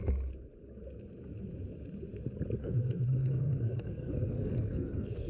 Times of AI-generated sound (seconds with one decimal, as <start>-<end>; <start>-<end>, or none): 2.6-5.3